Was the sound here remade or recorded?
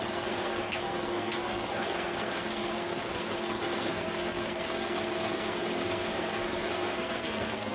remade